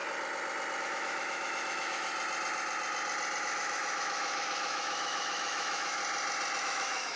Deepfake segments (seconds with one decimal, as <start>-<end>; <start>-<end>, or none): 0.8-2.1; 3.4-6.0; 6.6-7.2